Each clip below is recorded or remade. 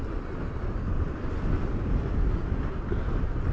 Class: recorded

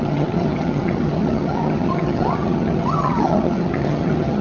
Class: remade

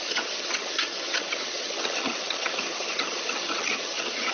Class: remade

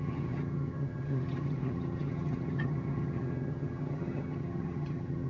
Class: remade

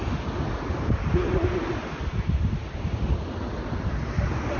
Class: recorded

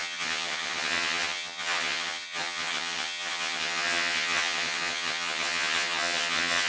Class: remade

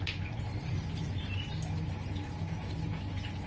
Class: recorded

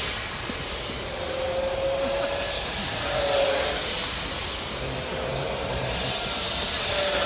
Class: recorded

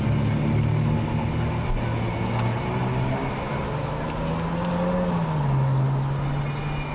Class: recorded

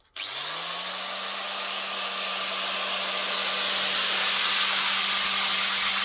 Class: recorded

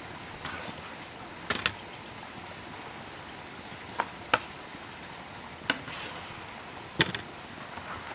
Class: recorded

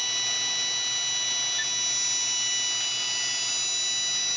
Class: recorded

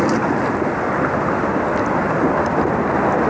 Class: recorded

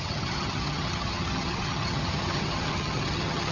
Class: remade